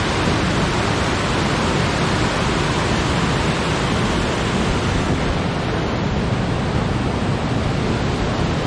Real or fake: real